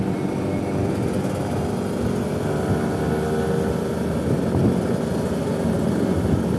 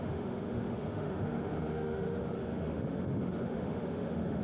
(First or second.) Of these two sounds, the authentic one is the first